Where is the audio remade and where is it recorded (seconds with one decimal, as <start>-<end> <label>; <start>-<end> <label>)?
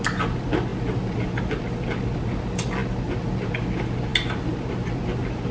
0.0-5.5 recorded